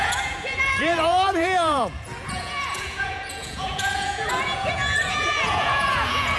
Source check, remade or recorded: remade